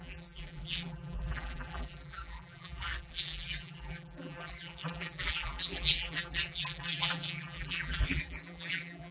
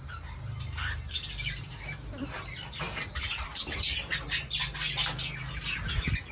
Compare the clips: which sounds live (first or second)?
second